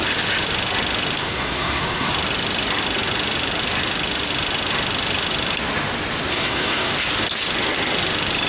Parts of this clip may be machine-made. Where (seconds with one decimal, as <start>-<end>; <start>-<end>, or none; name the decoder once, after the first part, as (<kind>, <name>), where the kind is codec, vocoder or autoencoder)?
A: 1.2-2.1 (codec, SNAC); 6.3-6.9